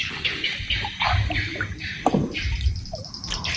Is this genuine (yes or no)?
yes